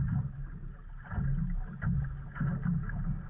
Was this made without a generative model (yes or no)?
yes